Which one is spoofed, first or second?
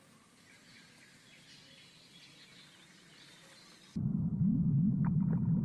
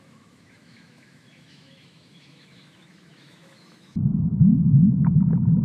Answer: second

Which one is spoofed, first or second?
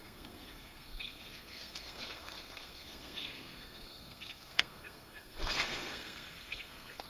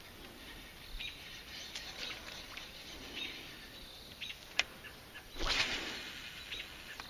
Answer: first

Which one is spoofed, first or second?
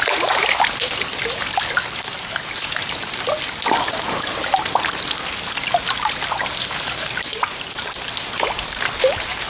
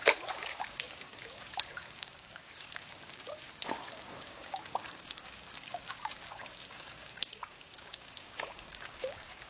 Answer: second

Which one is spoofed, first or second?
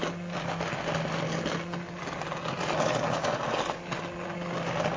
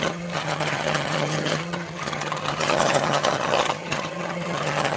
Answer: second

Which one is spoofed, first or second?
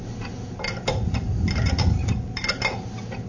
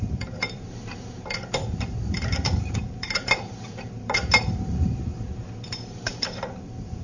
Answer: second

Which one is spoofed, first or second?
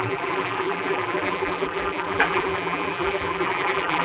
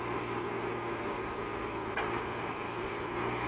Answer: first